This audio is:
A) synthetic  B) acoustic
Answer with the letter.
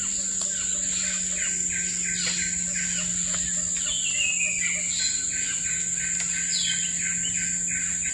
B